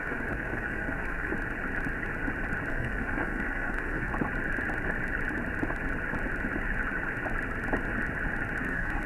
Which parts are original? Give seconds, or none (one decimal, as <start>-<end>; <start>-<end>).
1.3-2.7; 4.1-8.6